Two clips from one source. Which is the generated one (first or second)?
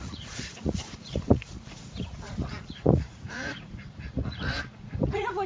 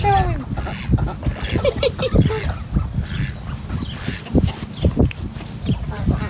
first